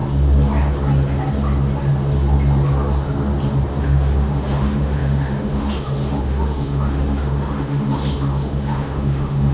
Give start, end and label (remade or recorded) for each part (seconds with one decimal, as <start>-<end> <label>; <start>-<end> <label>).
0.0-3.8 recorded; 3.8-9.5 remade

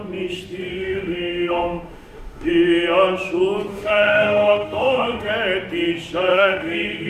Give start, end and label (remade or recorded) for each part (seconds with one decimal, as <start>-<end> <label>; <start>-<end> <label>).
0.0-0.7 recorded; 0.7-2.5 remade; 2.5-3.7 recorded; 3.7-5.3 remade; 5.3-6.3 recorded; 6.3-7.1 remade

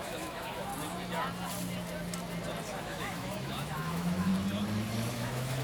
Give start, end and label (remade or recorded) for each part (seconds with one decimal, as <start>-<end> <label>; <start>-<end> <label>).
0.0-0.7 remade; 0.7-2.8 recorded; 2.8-4.3 remade; 4.3-5.1 recorded; 5.1-5.6 remade